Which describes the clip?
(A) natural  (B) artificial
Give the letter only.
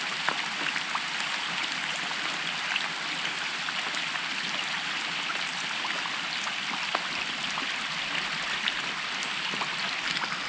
A